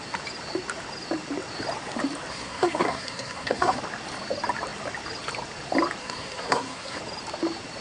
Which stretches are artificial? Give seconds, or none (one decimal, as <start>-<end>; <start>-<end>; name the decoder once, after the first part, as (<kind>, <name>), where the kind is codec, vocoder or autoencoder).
2.3-3.8 (codec, SNAC); 6.0-7.0